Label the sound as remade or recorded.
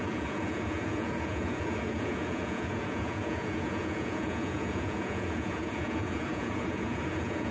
remade